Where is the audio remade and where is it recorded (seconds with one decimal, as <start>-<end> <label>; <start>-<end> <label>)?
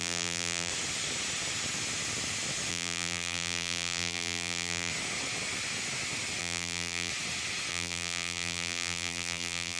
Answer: 0.0-0.7 remade; 0.7-2.7 recorded; 2.7-4.9 remade; 4.9-6.4 recorded; 6.4-7.1 remade; 7.1-7.7 recorded; 7.7-9.8 remade